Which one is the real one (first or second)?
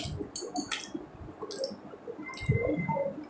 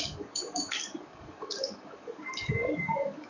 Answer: first